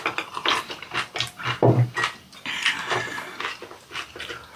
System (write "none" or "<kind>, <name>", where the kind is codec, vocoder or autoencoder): none